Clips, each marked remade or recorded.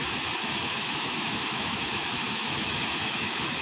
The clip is remade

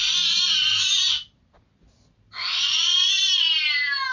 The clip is recorded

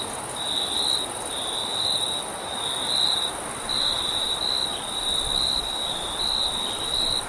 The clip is recorded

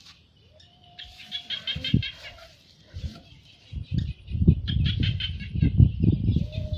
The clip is recorded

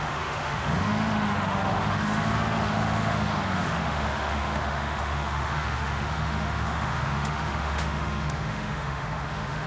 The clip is remade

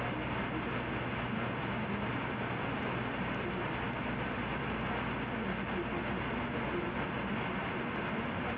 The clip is recorded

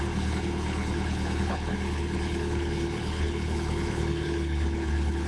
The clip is remade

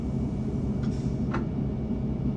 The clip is recorded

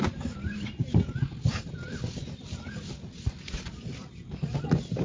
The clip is remade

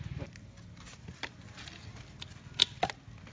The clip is recorded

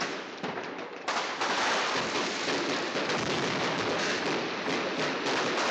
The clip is recorded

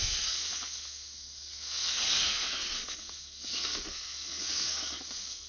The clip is remade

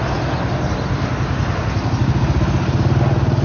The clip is recorded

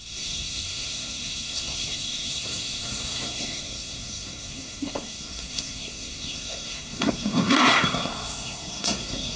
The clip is remade